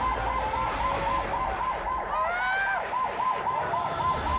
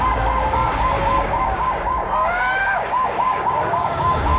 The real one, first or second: first